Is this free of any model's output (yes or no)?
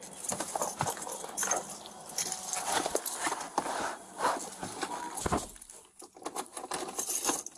yes